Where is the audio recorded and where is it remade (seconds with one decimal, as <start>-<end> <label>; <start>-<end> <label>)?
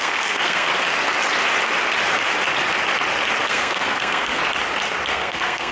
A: 0.0-0.7 remade; 0.7-3.4 recorded; 3.4-4.4 remade; 4.4-5.1 recorded; 5.1-5.7 remade